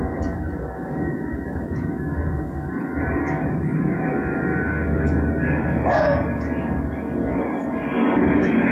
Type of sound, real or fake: fake